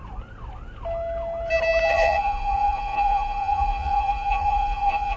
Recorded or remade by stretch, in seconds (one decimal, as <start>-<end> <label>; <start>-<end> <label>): 0.0-1.9 recorded; 1.9-5.2 remade